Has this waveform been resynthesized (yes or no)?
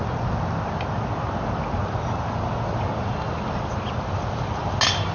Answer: no